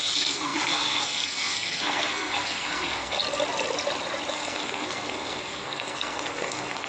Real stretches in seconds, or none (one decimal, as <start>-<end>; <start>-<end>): 3.2-4.3